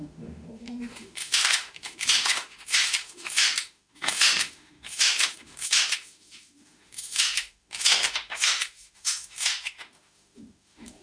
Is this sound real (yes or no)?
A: no